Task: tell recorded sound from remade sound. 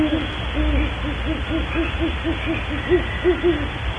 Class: recorded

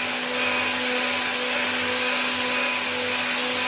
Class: recorded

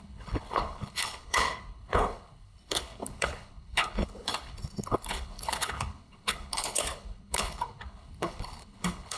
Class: remade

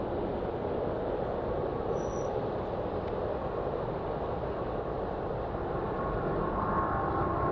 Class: recorded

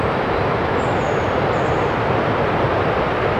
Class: recorded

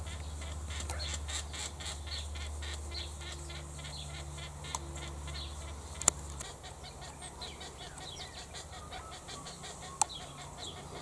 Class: recorded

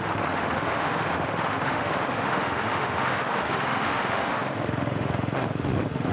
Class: remade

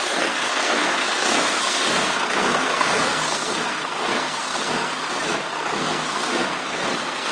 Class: remade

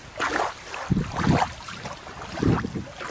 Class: recorded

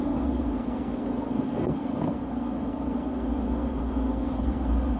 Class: remade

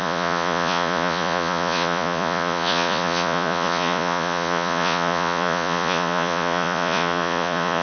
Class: remade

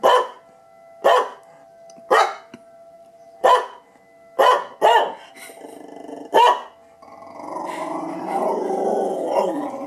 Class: recorded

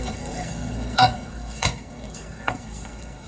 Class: remade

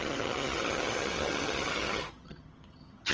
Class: remade